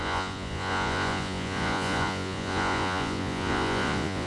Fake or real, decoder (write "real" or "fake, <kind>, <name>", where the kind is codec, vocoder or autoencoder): fake, vocoder, Vocos